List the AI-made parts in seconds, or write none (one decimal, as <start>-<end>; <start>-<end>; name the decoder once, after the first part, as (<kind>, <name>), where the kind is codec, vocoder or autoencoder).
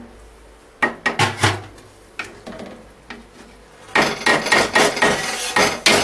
none